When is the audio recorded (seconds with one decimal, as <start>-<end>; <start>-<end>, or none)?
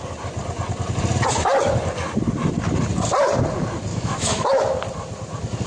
0.0-3.9; 4.6-5.7